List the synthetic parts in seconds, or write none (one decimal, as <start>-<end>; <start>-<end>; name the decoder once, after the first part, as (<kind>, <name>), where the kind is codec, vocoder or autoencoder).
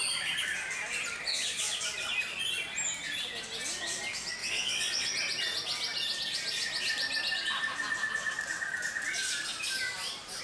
1.3-1.8 (vocoder, Vocos); 4.4-5.1